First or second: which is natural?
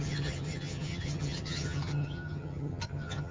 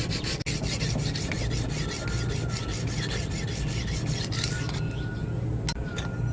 second